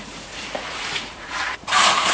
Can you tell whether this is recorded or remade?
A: remade